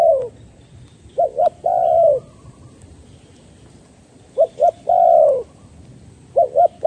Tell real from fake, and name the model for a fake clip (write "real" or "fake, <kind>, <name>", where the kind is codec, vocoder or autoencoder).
real